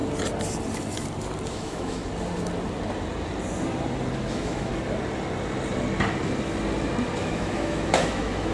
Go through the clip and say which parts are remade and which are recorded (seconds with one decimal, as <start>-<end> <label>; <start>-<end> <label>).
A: 0.0-1.5 recorded; 1.5-2.0 remade; 2.0-4.3 recorded; 4.3-4.7 remade; 4.7-7.2 recorded; 7.2-8.5 remade